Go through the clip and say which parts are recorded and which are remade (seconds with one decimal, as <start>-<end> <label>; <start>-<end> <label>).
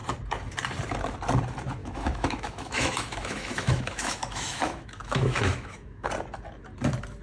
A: 0.0-1.8 recorded; 1.8-6.1 remade; 6.1-7.2 recorded